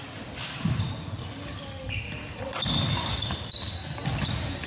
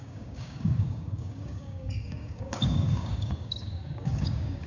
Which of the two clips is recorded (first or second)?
first